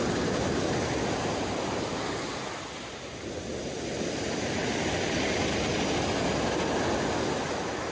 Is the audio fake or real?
real